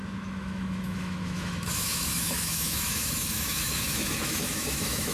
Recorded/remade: remade